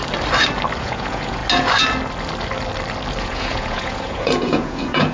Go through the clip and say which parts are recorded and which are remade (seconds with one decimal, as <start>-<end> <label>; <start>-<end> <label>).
0.0-0.8 recorded; 0.8-1.4 remade; 1.4-3.2 recorded; 3.2-5.1 remade